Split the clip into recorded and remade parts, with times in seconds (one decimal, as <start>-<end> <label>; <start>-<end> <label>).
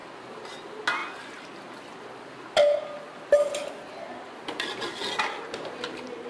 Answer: 0.0-6.3 recorded